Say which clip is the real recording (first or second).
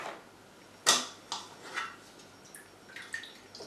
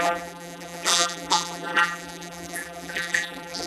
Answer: first